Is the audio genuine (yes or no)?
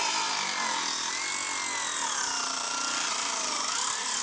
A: yes